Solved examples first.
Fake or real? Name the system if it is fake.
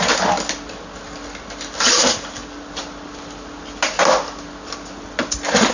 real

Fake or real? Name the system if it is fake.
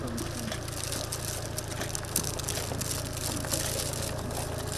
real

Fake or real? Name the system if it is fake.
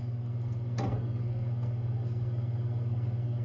fake, codec, SNAC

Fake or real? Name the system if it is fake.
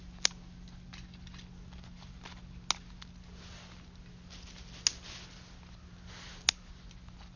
real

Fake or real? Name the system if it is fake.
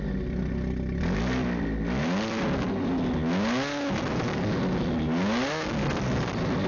real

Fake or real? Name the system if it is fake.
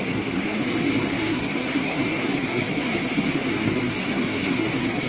fake, codec, SNAC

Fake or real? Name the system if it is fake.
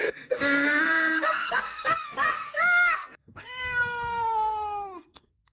fake, codec, SNAC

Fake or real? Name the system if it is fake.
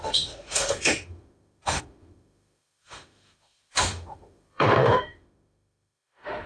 fake, autoencoder, DAC-VAE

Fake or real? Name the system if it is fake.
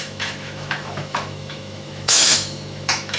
fake, autoencoder, DAC-VAE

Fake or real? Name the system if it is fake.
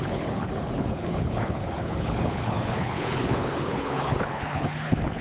fake, codec, HILCodec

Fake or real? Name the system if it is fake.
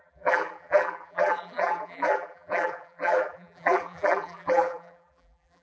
fake, vocoder, BigVGAN v2